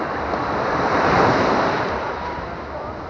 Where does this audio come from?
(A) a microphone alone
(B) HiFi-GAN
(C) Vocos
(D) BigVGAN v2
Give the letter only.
D